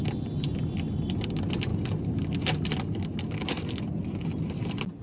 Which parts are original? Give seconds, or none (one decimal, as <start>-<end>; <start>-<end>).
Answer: 0.0-5.0